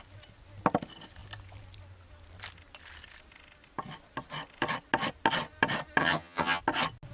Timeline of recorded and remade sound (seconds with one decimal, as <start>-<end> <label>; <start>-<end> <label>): 0.0-6.0 recorded; 6.0-6.6 remade; 6.6-7.1 recorded